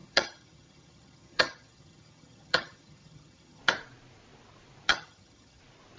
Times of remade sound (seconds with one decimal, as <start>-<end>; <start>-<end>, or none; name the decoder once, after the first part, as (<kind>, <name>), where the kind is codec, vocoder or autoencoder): 0.0-3.6 (vocoder, HiFi-GAN); 4.9-5.6